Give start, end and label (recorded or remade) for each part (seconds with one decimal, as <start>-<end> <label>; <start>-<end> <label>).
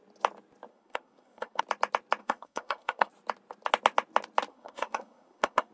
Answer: 0.0-0.7 recorded; 0.7-1.6 remade; 1.6-2.2 recorded; 2.2-3.1 remade; 3.1-4.5 recorded; 4.5-5.7 remade